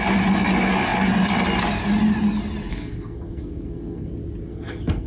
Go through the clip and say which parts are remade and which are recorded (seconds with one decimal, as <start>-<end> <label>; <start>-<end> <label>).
0.0-2.7 recorded; 2.7-4.1 remade; 4.1-4.5 recorded; 4.5-5.1 remade